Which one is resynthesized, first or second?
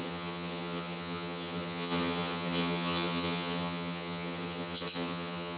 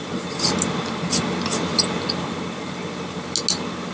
first